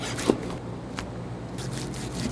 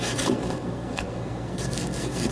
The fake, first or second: second